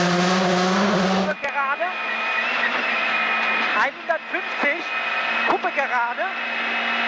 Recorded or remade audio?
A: recorded